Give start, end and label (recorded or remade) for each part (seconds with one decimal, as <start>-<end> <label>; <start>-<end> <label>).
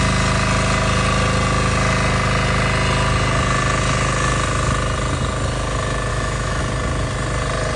0.0-6.1 recorded; 6.1-6.6 remade; 6.6-7.8 recorded